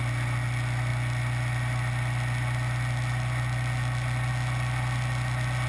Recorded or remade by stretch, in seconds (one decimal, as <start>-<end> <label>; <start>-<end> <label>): 0.0-5.7 recorded